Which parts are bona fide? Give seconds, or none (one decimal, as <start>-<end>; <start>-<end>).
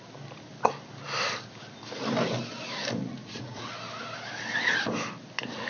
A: 0.0-3.0; 3.6-5.7